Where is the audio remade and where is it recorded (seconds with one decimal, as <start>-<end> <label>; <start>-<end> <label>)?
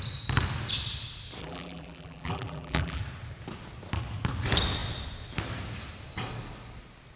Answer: 0.0-1.4 recorded; 1.4-3.0 remade; 3.0-7.2 recorded